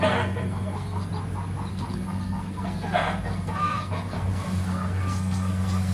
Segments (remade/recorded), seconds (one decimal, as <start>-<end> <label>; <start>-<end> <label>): 0.0-1.1 remade; 1.1-1.7 recorded; 1.7-5.9 remade